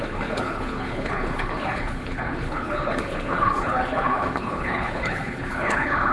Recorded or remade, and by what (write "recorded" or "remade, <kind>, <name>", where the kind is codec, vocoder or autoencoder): remade, codec, HILCodec